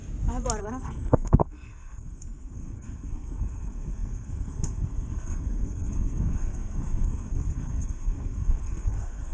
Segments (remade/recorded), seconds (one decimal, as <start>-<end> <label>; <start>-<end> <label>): 0.0-0.6 recorded; 0.6-9.3 remade